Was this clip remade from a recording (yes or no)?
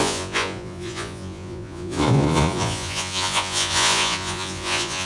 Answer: yes